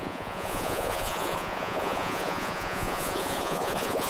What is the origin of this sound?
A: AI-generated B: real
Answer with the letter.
A